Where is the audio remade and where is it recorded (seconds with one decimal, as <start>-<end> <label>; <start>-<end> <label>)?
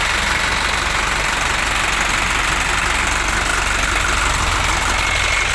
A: 0.0-5.5 recorded